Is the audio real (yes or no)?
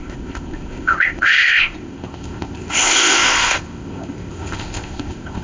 no